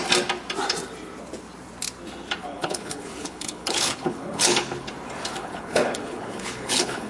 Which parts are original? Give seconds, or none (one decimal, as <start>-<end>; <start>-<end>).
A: 0.0-2.4; 4.9-5.4